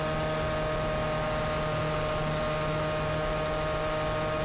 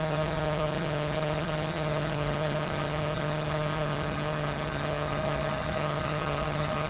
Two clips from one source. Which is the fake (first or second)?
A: second